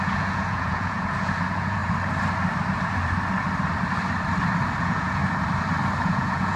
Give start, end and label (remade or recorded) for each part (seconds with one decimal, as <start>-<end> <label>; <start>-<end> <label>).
0.0-1.8 remade; 1.8-4.8 recorded; 4.8-5.2 remade; 5.2-6.0 recorded; 6.0-6.6 remade